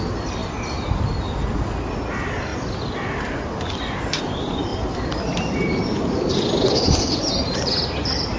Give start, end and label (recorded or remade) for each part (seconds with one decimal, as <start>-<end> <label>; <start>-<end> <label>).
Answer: 0.0-2.5 recorded; 2.5-4.2 remade; 4.2-4.7 recorded; 4.7-7.3 remade; 7.3-8.4 recorded